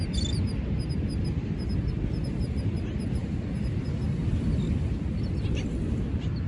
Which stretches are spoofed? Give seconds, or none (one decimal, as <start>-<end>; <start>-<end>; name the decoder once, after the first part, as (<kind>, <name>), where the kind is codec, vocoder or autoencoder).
none